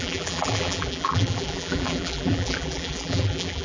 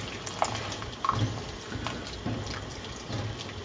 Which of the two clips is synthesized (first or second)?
first